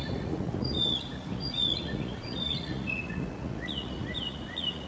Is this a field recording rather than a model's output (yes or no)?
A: no